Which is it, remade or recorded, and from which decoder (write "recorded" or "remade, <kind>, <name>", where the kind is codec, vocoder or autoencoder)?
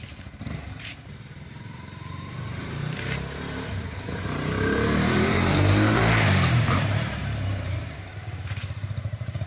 remade, vocoder, BigVGAN v2